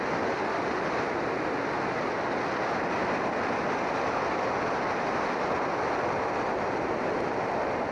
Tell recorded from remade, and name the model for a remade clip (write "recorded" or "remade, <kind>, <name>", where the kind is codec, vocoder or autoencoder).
recorded